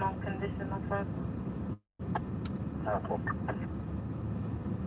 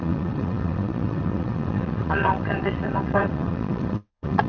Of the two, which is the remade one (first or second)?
second